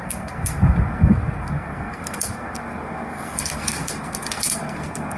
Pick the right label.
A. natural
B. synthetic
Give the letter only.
B